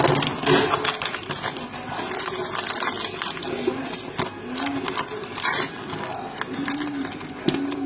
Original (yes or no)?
yes